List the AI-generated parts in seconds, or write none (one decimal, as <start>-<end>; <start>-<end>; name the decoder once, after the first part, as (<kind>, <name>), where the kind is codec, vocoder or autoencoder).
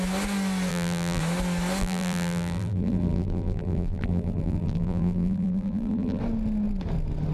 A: 0.7-1.2 (vocoder, BigVGAN v2); 1.8-6.2